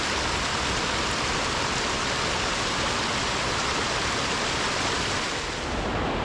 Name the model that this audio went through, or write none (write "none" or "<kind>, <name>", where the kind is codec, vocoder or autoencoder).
none